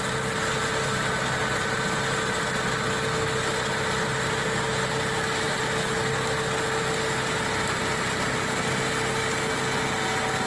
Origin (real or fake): real